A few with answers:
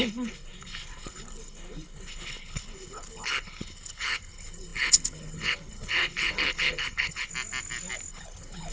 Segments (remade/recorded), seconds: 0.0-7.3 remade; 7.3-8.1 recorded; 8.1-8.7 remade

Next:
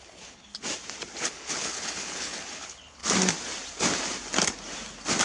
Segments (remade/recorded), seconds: 0.0-0.5 remade; 0.5-1.2 recorded; 1.2-3.0 remade; 3.0-5.2 recorded

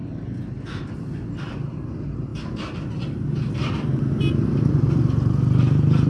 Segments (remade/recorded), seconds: 0.0-6.1 recorded

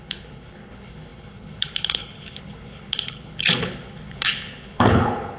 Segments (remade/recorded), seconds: 0.0-5.4 remade

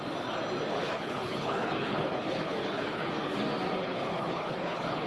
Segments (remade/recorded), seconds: 0.0-0.7 recorded; 0.7-3.1 remade; 3.1-3.8 recorded; 3.8-5.1 remade

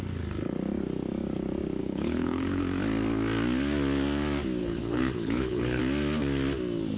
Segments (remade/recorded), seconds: 0.0-1.8 recorded; 1.8-2.6 remade; 2.6-4.6 recorded; 4.6-5.8 remade; 5.8-7.0 recorded

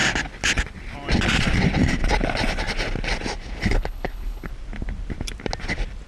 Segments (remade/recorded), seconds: 0.0-3.6 recorded; 3.6-4.5 remade; 4.5-6.1 recorded